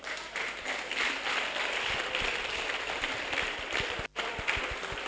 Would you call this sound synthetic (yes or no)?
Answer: yes